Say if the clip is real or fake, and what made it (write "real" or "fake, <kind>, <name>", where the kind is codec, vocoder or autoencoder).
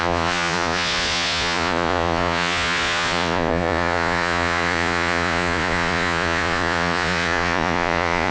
fake, vocoder, Vocos